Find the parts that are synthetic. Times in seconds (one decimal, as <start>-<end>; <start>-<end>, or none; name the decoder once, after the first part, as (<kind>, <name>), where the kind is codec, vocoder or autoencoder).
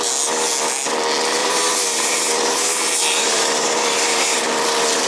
1.4-4.5 (vocoder, BigVGAN v2)